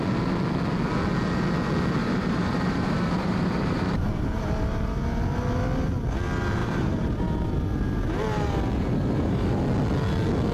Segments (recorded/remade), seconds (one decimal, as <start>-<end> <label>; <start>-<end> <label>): 0.0-2.0 recorded; 2.0-4.4 remade; 4.4-6.6 recorded; 6.6-9.6 remade; 9.6-10.5 recorded